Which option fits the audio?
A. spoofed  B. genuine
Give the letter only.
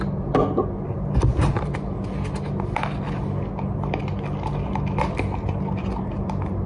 B